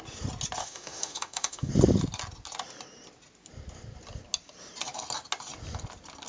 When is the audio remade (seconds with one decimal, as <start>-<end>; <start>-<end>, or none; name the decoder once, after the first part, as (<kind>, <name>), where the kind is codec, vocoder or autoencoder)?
0.6-1.7 (autoencoder, DAC-VAE)